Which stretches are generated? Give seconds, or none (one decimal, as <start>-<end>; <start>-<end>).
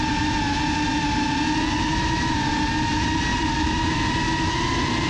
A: 1.9-2.5; 3.3-3.9